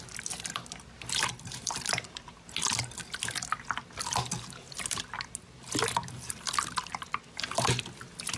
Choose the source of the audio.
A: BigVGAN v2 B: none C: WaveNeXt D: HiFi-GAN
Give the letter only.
B